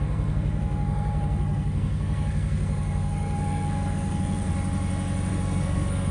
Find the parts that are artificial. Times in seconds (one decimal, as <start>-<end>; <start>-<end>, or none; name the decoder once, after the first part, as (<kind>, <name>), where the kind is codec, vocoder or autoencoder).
0.0-4.5 (codec, SNAC); 5.3-6.1